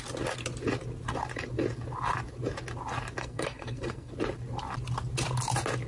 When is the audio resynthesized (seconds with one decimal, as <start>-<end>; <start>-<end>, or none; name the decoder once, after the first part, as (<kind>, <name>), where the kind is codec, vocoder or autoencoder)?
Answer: 3.2-4.1 (codec, SNAC)